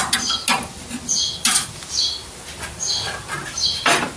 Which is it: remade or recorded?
recorded